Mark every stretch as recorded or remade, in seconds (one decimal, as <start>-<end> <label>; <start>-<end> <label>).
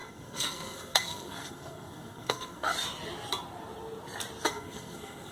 0.0-2.7 remade; 2.7-4.5 recorded; 4.5-5.3 remade